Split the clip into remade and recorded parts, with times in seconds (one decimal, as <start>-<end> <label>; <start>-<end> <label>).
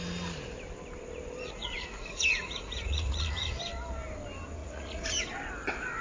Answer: 0.0-1.4 recorded; 1.4-3.5 remade; 3.5-4.6 recorded; 4.6-5.2 remade; 5.2-6.0 recorded